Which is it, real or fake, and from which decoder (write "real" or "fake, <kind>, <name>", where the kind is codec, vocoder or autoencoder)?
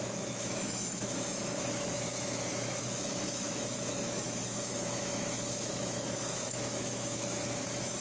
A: fake, autoencoder, DAC-VAE